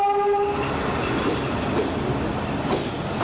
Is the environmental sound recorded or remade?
recorded